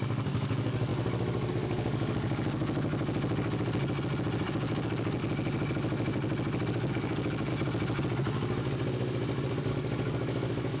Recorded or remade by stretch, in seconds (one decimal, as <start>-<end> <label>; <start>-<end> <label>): 0.0-0.9 remade; 0.9-1.5 recorded; 1.5-2.9 remade; 2.9-4.5 recorded; 4.5-5.2 remade; 5.2-6.9 recorded; 6.9-7.5 remade; 7.5-9.7 recorded; 9.7-10.8 remade